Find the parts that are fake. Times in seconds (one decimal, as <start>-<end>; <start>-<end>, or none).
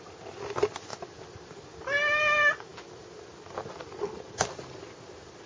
none